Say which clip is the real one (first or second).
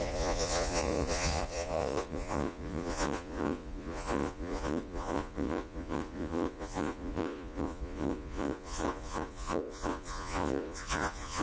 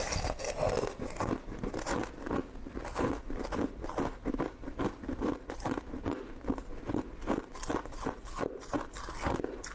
second